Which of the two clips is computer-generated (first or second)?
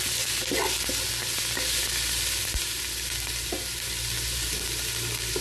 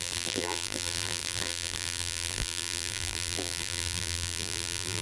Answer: second